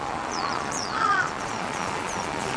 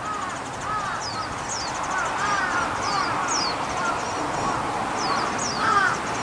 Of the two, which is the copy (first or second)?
first